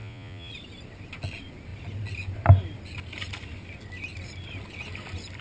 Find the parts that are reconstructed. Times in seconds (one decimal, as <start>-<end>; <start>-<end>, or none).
0.0-0.5